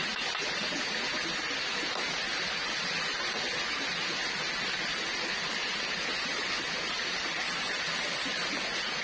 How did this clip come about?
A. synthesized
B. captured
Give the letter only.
B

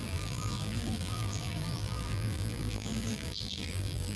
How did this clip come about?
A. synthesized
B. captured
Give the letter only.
A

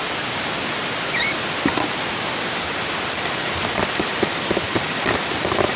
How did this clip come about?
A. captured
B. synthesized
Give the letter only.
B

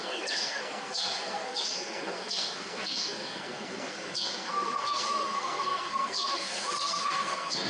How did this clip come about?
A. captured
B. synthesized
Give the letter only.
B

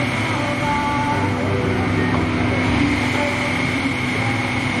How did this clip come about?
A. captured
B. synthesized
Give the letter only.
A